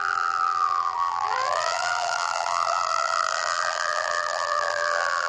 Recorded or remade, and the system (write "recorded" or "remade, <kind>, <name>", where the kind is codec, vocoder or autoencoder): remade, vocoder, BigVGAN v2